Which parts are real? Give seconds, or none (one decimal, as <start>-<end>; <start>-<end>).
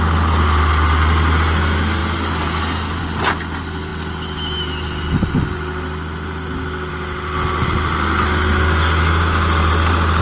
0.0-10.2